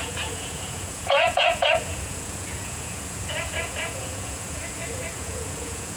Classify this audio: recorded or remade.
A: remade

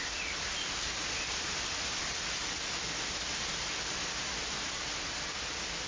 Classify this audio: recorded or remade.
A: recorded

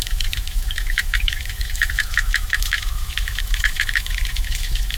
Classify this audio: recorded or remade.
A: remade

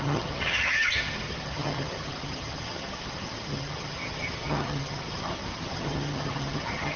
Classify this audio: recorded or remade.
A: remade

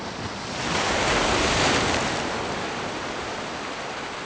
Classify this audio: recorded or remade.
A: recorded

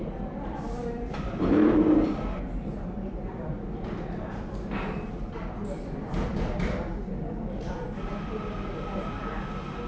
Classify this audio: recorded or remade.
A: remade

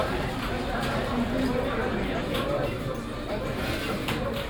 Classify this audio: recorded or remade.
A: recorded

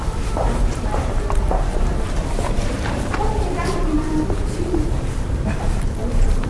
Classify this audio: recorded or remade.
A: remade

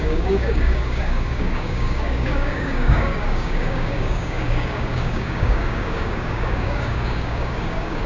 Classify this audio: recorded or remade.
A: remade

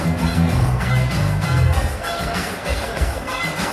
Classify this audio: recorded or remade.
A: remade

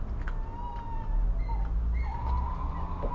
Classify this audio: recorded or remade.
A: recorded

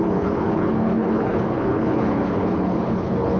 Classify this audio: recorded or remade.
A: remade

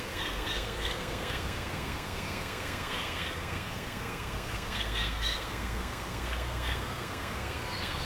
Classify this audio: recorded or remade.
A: remade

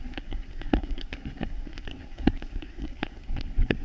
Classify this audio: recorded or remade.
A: remade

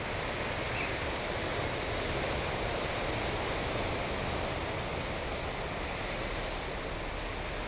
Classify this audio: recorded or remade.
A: recorded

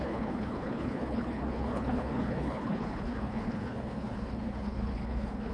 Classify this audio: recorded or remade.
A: remade